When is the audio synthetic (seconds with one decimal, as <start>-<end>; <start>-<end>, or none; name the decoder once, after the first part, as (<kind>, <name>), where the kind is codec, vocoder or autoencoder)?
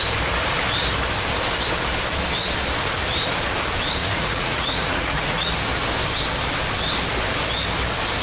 4.0-5.5 (vocoder, Vocos)